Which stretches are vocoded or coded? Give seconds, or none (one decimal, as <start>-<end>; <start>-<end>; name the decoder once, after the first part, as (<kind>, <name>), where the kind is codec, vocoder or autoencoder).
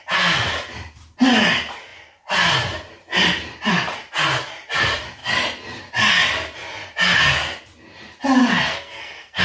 8.4-9.4 (codec, SNAC)